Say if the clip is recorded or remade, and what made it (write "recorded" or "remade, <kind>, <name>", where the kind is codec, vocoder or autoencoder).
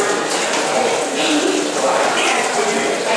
recorded